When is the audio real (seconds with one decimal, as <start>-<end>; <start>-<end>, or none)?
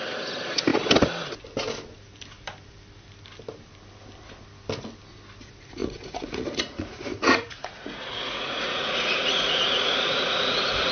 0.0-5.8